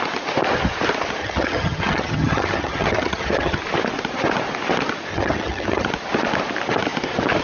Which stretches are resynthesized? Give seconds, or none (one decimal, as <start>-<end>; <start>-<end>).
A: 1.2-3.6; 5.1-5.9